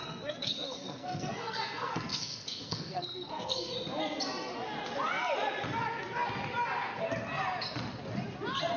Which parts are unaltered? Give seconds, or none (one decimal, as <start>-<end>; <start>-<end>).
3.7-8.8